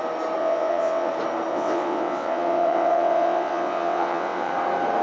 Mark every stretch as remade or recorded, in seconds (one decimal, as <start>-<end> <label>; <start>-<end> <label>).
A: 0.0-0.4 recorded; 0.4-1.1 remade; 1.1-1.5 recorded; 1.5-4.5 remade; 4.5-5.0 recorded